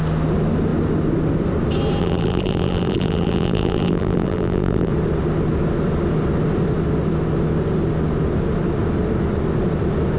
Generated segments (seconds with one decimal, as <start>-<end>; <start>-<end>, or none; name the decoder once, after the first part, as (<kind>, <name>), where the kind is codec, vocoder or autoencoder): 2.0-4.9 (vocoder, BigVGAN v2)